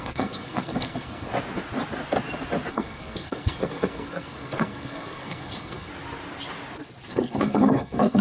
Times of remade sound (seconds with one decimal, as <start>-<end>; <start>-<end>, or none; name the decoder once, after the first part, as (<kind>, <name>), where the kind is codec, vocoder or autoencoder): 0.0-1.3 (codec, SNAC); 2.7-5.9; 7.1-8.2